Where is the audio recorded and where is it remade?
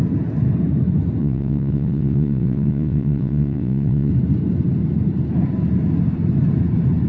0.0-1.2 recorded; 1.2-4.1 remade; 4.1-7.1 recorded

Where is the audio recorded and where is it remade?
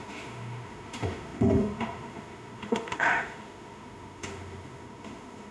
0.0-5.5 remade